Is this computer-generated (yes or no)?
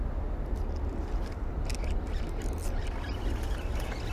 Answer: no